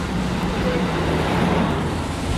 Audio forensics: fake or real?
real